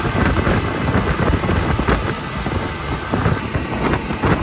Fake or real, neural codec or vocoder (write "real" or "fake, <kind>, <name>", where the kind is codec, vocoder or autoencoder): real